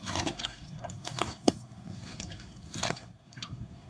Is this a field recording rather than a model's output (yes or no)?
no